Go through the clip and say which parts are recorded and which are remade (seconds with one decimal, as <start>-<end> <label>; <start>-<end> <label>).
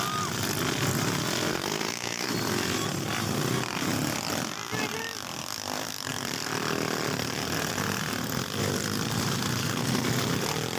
0.0-1.5 recorded; 1.5-2.3 remade; 2.3-9.6 recorded; 9.6-10.1 remade; 10.1-10.8 recorded